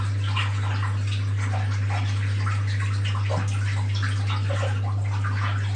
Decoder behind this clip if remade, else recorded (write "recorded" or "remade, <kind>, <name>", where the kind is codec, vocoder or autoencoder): recorded